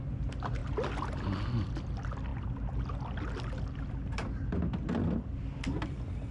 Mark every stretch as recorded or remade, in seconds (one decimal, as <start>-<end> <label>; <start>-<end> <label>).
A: 0.0-6.3 recorded